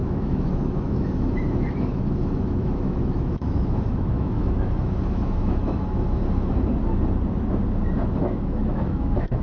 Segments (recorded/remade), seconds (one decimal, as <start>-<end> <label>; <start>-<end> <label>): 0.0-6.2 remade; 6.2-8.2 recorded; 8.2-9.4 remade